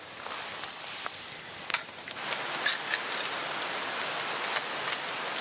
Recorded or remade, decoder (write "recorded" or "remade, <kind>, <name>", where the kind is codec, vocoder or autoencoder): recorded